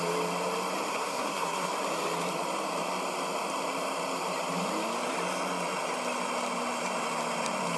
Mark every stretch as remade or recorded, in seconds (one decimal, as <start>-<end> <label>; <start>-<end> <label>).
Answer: 0.0-0.9 recorded; 0.9-1.7 remade; 1.7-7.8 recorded